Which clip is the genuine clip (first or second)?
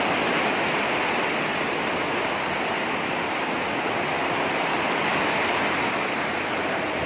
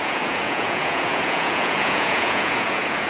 first